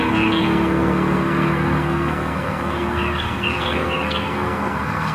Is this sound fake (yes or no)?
yes